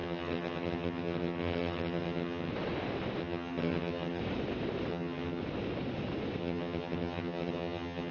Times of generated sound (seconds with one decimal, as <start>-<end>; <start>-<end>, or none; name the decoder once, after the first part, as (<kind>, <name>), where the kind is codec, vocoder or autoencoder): 0.0-2.5 (vocoder, HiFi-GAN); 3.2-4.2; 4.9-5.4; 6.4-8.1